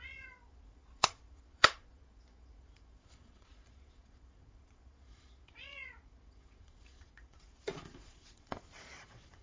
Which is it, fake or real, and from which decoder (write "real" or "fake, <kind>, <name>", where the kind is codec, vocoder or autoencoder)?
fake, vocoder, Vocos